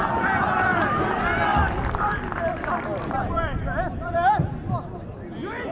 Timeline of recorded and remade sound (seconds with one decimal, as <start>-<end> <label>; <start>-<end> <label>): 0.0-1.5 recorded; 1.5-4.7 remade; 4.7-5.7 recorded